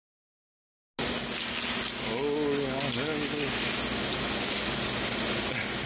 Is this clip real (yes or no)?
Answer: yes